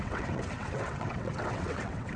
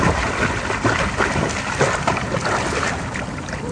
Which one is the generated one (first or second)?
first